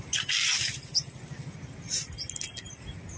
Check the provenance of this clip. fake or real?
real